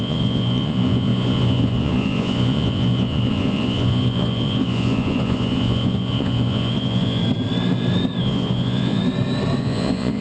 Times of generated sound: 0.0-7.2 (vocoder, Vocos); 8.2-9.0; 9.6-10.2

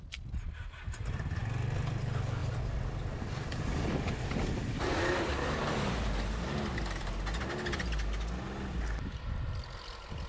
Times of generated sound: none

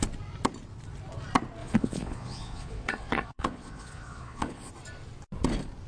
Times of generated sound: 1.6-4.7 (vocoder, Vocos)

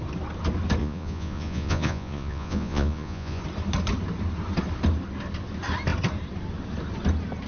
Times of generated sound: 0.8-3.4 (vocoder, Vocos)

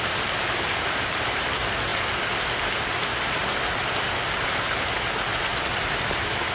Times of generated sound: none

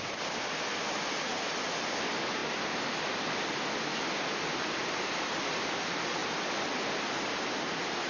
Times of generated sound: none

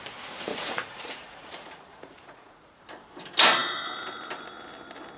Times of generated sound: 0.5-2.8 (vocoder, Vocos)